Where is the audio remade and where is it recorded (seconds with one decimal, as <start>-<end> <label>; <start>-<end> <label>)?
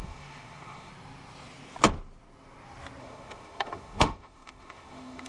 0.0-0.9 remade; 0.9-3.0 recorded; 3.0-5.3 remade